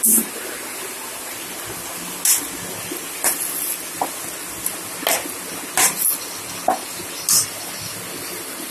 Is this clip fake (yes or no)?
no